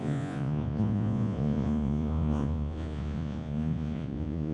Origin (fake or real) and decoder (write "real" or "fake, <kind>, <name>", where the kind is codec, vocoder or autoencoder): fake, vocoder, Vocos